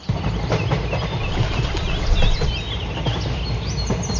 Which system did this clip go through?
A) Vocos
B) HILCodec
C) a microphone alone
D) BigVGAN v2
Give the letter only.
C